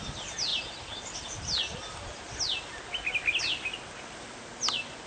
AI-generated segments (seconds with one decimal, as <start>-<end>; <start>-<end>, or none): none